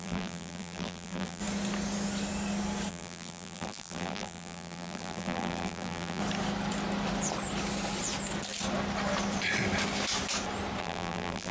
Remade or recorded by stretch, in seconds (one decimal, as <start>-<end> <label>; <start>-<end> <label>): 0.0-1.4 remade; 1.4-2.9 recorded; 2.9-6.2 remade; 6.2-10.8 recorded; 10.8-11.5 remade